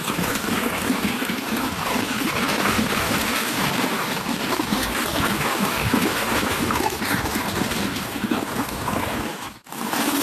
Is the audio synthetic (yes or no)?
yes